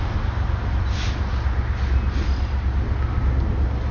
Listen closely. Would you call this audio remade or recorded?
recorded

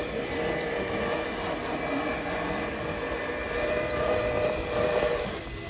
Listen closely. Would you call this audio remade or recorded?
recorded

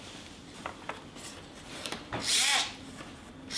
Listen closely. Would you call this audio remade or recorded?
recorded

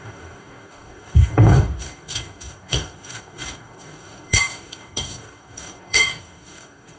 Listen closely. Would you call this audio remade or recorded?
remade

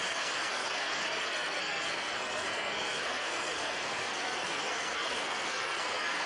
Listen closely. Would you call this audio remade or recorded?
remade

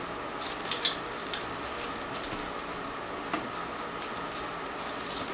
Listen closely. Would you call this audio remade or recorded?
recorded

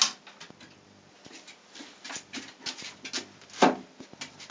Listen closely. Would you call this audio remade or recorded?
recorded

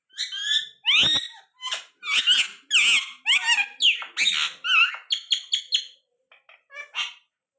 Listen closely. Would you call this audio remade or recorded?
recorded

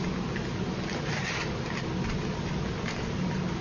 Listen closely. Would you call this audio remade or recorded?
recorded